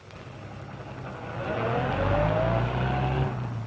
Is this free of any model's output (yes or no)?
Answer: yes